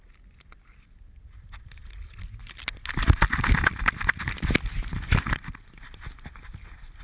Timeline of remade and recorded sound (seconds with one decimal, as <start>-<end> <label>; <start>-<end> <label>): 0.0-7.0 recorded